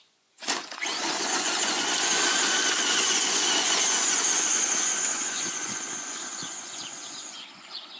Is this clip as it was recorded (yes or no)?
no